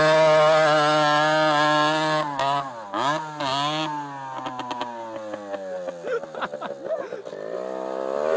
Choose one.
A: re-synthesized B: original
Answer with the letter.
B